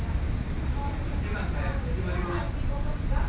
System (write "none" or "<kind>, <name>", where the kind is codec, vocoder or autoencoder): none